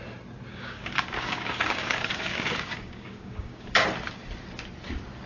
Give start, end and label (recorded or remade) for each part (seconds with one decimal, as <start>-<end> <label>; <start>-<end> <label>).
0.0-0.5 recorded; 0.5-3.7 remade; 3.7-5.3 recorded